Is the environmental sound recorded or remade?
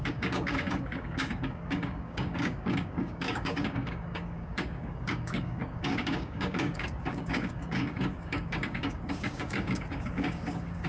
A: remade